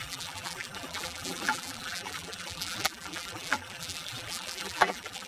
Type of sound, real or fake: fake